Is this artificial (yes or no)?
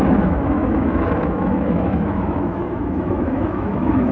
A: yes